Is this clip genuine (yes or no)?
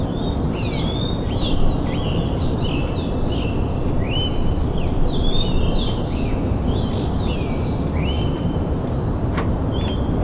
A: yes